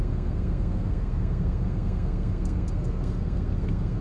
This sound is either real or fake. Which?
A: fake